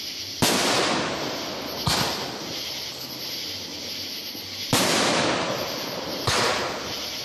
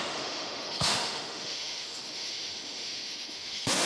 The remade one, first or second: second